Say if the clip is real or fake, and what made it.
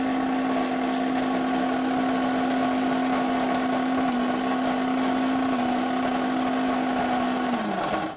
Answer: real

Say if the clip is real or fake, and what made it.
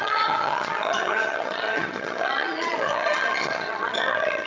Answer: fake, vocoder, HiFi-GAN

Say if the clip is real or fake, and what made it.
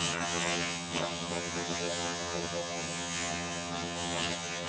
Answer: fake, vocoder, HiFi-GAN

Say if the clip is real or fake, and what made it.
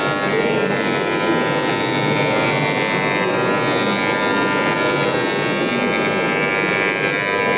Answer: real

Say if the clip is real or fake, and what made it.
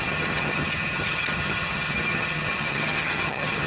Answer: fake, vocoder, HiFi-GAN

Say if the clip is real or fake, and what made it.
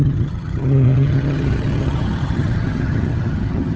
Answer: fake, vocoder, HiFi-GAN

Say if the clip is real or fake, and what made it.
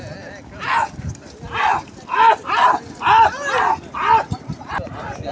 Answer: real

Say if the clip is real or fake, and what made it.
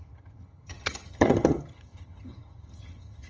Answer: fake, vocoder, HiFi-GAN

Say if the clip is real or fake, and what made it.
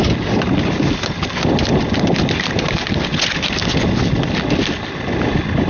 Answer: real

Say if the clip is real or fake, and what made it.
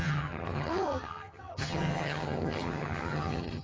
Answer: fake, vocoder, HiFi-GAN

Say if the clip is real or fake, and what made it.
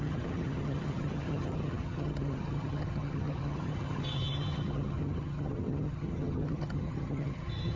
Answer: fake, vocoder, HiFi-GAN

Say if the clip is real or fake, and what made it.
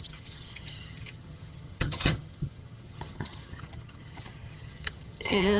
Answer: fake, vocoder, HiFi-GAN